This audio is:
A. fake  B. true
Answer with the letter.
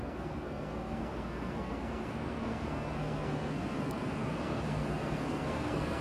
A